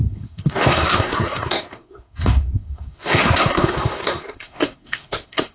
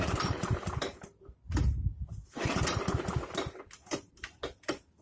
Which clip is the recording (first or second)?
second